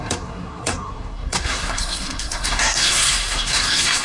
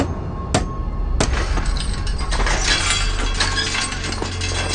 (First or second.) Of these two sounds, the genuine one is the second